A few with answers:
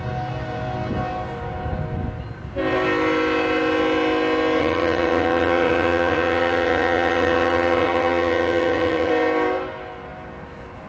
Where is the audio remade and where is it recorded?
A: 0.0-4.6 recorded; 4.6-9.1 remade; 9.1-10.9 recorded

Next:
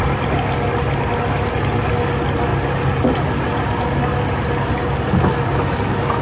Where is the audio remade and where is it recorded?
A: 0.0-6.2 recorded

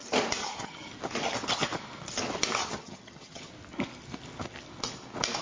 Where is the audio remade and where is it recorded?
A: 0.0-0.4 recorded; 0.4-0.9 remade; 0.9-2.6 recorded; 2.6-3.5 remade; 3.5-5.4 recorded

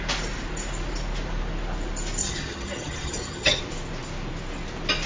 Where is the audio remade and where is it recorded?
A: 0.0-2.2 recorded; 2.2-3.6 remade; 3.6-5.1 recorded

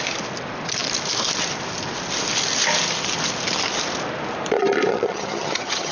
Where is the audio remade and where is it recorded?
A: 0.0-4.9 recorded; 4.9-5.9 remade

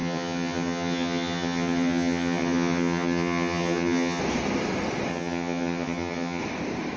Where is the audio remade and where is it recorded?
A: 0.0-4.2 remade; 4.2-5.1 recorded; 5.1-6.4 remade; 6.4-7.0 recorded

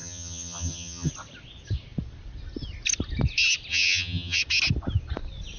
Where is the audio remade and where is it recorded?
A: 0.0-1.1 remade; 1.1-3.7 recorded; 3.7-4.4 remade; 4.4-5.6 recorded

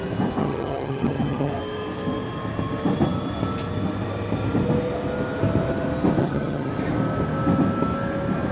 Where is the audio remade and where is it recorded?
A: 0.0-0.4 recorded; 0.4-1.5 remade; 1.5-6.2 recorded; 6.2-6.7 remade; 6.7-8.5 recorded